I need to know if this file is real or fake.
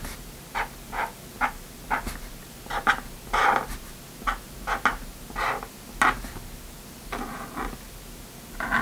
real